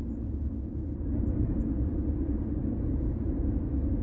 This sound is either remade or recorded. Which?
remade